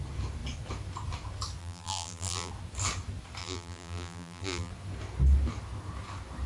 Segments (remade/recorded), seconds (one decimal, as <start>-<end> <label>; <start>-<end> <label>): 0.0-1.6 recorded; 1.6-2.5 remade; 2.5-3.4 recorded; 3.4-4.7 remade; 4.7-6.5 recorded